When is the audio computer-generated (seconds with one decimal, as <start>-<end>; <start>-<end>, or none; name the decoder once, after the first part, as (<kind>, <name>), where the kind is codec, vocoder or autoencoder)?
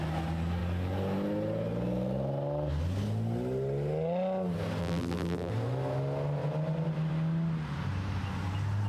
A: 4.8-5.5 (vocoder, BigVGAN v2)